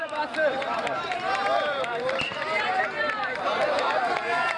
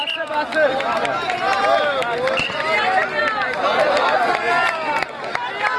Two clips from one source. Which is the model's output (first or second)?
first